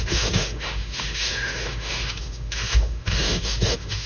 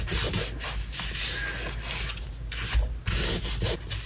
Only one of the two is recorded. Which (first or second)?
second